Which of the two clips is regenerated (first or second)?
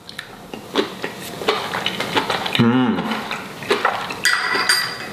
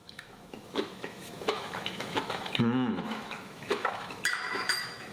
second